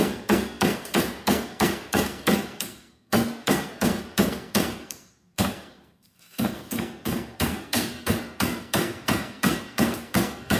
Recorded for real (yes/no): no